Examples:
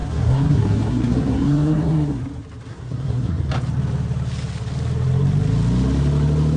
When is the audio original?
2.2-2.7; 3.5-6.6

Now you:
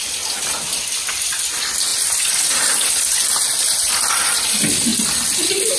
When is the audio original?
0.0-5.8

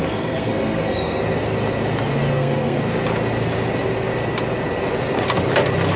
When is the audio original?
1.2-2.3; 2.8-6.0

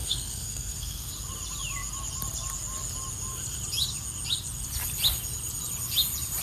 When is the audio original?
1.1-6.4

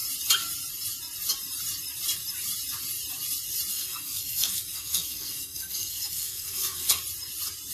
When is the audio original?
0.0-3.7; 7.0-7.7

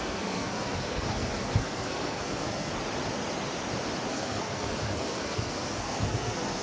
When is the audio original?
2.7-4.1

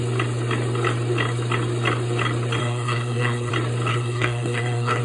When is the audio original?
0.0-2.6; 3.5-3.9

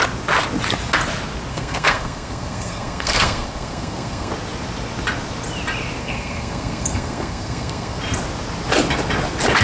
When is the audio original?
0.0-1.5; 4.3-6.0; 8.0-9.6